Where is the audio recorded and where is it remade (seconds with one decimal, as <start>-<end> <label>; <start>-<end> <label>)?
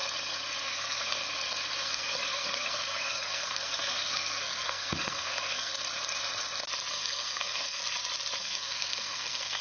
0.0-0.6 recorded; 0.6-1.2 remade; 1.2-1.8 recorded; 1.8-5.7 remade; 5.7-6.9 recorded; 6.9-7.8 remade; 7.8-8.4 recorded; 8.4-9.6 remade